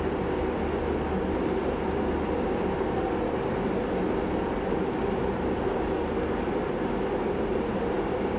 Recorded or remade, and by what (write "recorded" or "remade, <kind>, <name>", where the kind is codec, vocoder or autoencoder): recorded